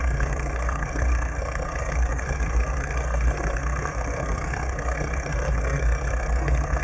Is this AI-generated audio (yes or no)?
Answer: yes